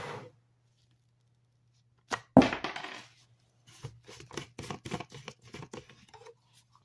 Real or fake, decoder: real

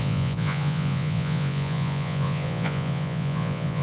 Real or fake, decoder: fake, vocoder, Vocos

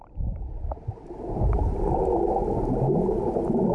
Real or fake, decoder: real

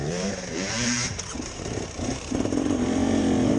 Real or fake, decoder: fake, vocoder, BigVGAN v2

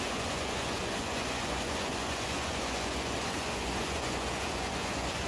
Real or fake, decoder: fake, vocoder, Vocos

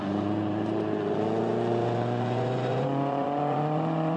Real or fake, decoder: fake, vocoder, Vocos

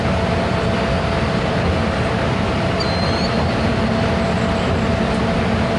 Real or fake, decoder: real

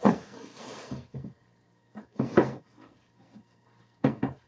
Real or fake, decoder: fake, codec, SNAC